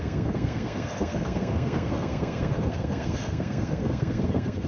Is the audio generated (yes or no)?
yes